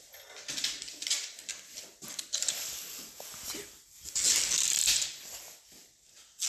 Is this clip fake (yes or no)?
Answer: no